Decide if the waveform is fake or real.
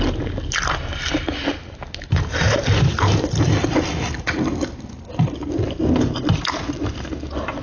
real